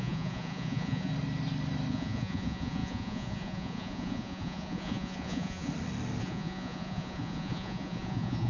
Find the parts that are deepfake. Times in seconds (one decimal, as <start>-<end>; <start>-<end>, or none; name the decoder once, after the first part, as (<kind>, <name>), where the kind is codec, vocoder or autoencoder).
0.0-1.1 (vocoder, Vocos); 1.9-5.7; 6.2-8.5

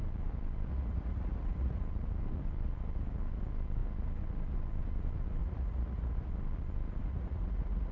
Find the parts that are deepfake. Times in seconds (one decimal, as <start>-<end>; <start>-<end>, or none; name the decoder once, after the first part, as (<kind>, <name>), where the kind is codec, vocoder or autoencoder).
0.7-1.8 (vocoder, Vocos); 5.4-6.3; 7.0-7.9